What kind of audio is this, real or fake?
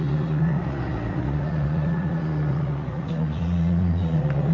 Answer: fake